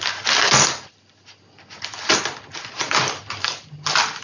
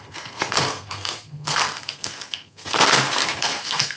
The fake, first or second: second